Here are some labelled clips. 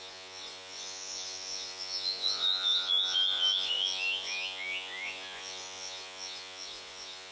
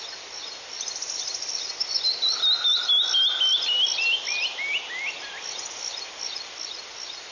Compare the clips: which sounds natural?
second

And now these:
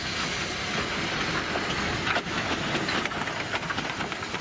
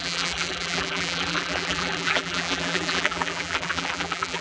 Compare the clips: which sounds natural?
first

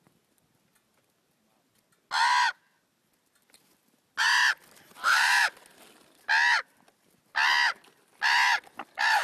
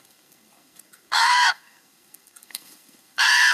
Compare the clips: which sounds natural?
first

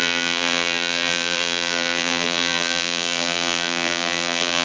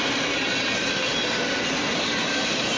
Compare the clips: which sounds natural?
second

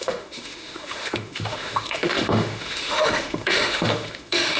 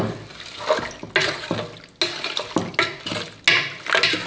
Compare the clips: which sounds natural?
second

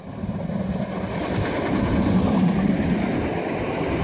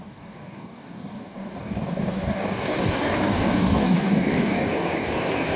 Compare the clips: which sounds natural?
first